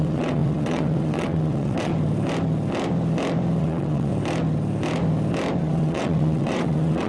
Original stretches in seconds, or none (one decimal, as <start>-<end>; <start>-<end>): 1.9-3.6; 4.1-5.6